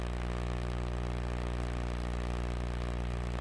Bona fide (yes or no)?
yes